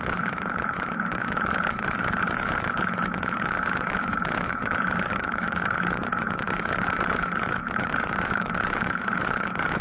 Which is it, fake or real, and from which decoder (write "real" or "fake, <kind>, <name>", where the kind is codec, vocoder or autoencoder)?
fake, autoencoder, DAC-VAE